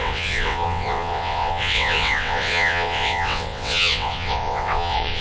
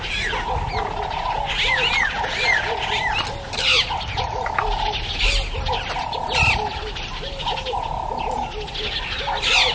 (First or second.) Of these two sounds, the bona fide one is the second